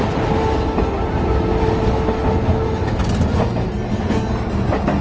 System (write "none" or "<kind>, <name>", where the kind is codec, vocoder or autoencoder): none